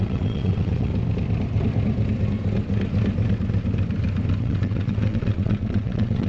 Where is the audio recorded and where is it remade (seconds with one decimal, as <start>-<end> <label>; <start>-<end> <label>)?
0.0-0.9 remade; 0.9-4.4 recorded; 4.4-6.3 remade

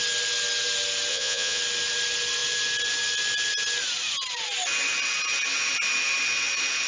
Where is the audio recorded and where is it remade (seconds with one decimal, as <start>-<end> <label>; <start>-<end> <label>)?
0.0-1.1 recorded; 1.1-1.6 remade; 1.6-6.9 recorded

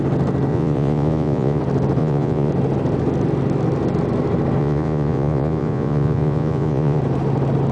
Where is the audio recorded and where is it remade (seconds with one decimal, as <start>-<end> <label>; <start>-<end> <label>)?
0.0-0.5 recorded; 0.5-1.6 remade; 1.6-2.0 recorded; 2.0-2.5 remade; 2.5-4.6 recorded; 4.6-7.0 remade; 7.0-7.7 recorded

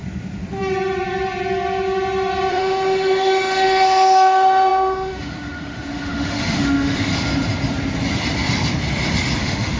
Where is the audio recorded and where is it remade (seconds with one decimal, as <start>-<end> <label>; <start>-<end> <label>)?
0.0-2.5 recorded; 2.5-7.1 remade; 7.1-9.4 recorded; 9.4-9.8 remade

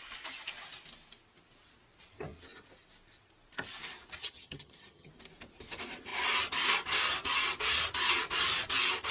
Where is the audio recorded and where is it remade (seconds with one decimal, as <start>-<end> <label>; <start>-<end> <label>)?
0.0-4.2 recorded; 4.2-5.1 remade; 5.1-9.1 recorded

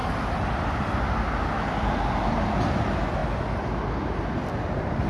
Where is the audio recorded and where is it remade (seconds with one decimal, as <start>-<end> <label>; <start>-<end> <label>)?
0.0-5.1 recorded

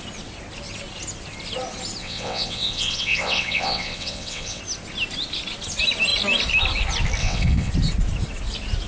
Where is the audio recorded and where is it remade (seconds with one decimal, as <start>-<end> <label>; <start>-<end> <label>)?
0.0-2.0 recorded; 2.0-4.6 remade; 4.6-7.2 recorded; 7.2-7.7 remade; 7.7-8.9 recorded

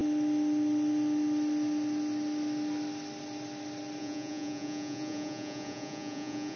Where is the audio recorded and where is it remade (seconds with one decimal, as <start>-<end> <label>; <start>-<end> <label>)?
0.0-4.0 recorded; 4.0-6.6 remade